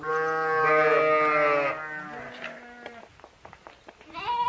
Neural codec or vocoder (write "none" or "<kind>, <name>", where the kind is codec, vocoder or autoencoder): none